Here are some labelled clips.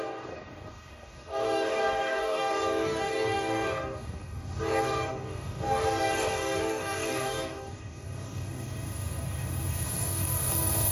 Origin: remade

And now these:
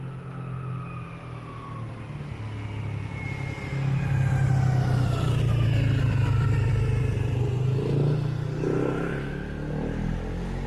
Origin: recorded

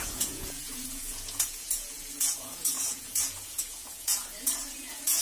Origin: remade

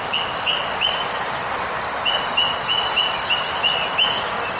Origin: recorded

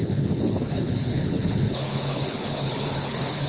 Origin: remade